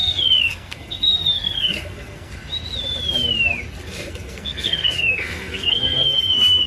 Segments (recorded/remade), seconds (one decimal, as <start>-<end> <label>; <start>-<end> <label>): 0.0-2.4 remade; 2.4-3.8 recorded; 3.8-6.7 remade